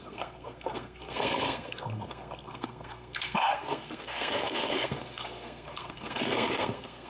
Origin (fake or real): fake